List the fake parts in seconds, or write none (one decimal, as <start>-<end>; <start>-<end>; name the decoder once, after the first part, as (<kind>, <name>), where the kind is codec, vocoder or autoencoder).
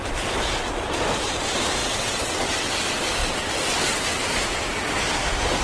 1.8-2.7 (vocoder, WaveNeXt)